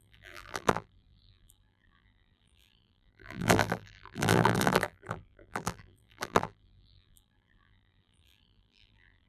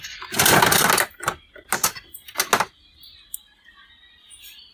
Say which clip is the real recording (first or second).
second